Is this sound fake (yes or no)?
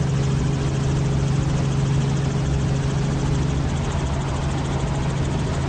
no